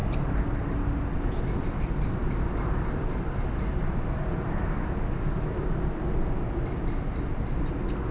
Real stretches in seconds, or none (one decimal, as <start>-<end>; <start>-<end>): 0.0-8.1